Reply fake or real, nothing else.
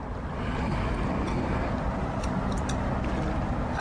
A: real